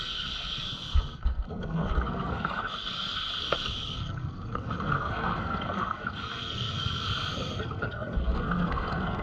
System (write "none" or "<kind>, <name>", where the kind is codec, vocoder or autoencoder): codec, SNAC